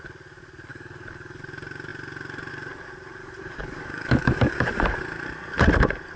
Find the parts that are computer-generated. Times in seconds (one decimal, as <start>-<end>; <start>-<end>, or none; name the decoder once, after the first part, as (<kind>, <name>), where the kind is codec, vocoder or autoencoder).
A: 0.7-1.4 (codec, DAC); 3.2-5.0